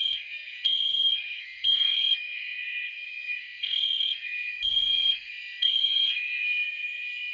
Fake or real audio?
fake